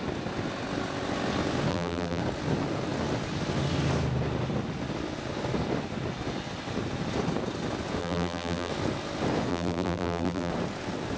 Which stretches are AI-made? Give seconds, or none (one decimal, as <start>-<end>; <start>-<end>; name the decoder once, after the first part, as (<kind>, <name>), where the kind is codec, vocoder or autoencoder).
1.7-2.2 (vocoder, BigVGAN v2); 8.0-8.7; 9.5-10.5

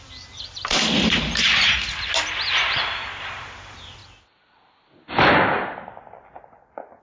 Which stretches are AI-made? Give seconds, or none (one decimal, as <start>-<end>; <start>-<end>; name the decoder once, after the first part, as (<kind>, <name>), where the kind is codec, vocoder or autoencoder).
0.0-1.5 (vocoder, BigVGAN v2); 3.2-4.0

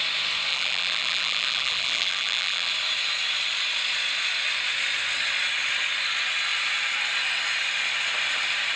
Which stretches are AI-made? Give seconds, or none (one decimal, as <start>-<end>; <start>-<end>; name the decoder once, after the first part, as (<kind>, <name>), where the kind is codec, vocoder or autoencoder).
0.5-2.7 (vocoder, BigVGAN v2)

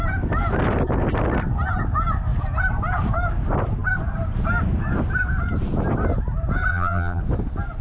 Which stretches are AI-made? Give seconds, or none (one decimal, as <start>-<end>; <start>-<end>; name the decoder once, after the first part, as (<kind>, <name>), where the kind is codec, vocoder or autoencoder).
6.7-7.2 (vocoder, BigVGAN v2)